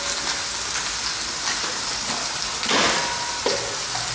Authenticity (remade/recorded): recorded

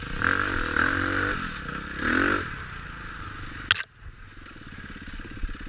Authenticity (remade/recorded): recorded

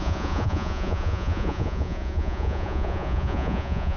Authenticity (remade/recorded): remade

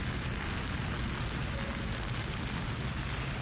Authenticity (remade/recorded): recorded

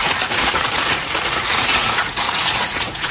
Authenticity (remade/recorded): remade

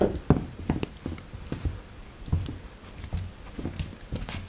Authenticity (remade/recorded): recorded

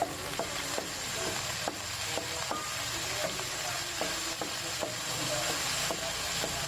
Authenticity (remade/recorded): recorded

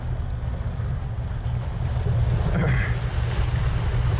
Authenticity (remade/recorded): recorded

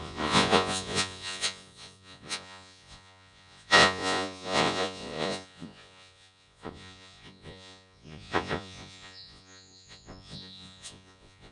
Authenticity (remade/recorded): remade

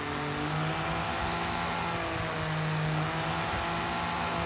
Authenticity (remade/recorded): recorded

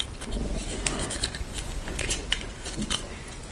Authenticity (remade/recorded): remade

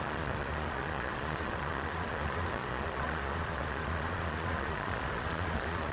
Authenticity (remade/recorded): remade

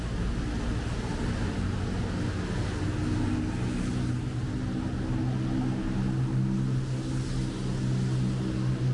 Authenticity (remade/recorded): recorded